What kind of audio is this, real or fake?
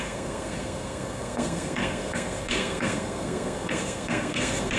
fake